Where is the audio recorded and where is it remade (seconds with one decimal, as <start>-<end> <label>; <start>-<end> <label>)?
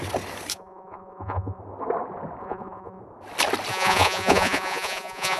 0.0-0.5 recorded; 0.5-1.6 remade; 1.6-2.4 recorded; 2.4-3.0 remade; 3.0-3.7 recorded; 3.7-5.4 remade